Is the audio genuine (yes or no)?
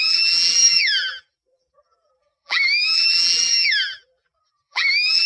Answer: no